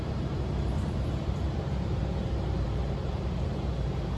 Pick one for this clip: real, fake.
fake